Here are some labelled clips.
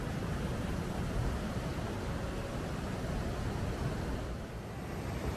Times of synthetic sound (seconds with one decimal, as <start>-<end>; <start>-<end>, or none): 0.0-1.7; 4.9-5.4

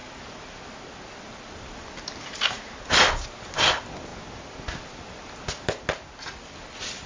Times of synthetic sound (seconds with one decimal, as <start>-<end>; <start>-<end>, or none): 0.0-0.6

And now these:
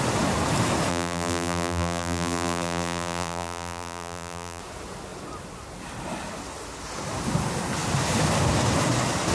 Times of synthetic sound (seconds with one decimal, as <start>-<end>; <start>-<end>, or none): 0.9-4.6

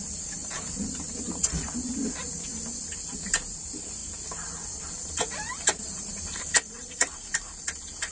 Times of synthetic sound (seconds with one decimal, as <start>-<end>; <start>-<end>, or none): 0.0-8.1